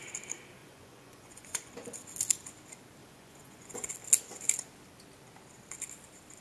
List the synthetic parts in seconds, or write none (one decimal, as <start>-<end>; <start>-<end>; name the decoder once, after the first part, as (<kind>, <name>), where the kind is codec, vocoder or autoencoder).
0.6-1.7 (vocoder, Vocos); 3.0-3.9